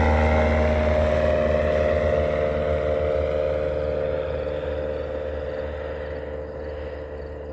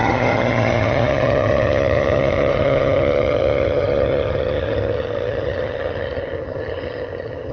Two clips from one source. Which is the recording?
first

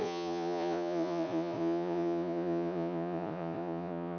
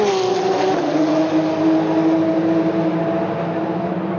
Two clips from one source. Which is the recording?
second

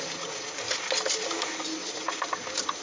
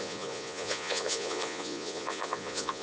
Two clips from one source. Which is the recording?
first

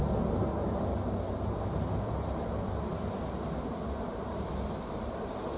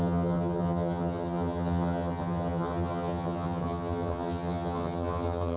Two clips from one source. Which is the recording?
first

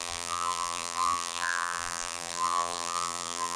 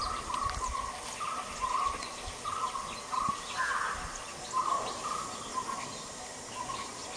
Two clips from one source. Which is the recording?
second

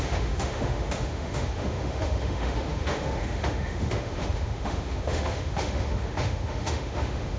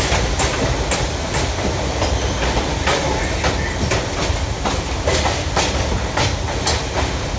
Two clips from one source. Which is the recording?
second